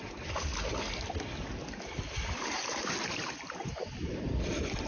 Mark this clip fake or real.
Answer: real